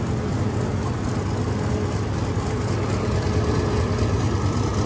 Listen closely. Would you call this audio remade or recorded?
recorded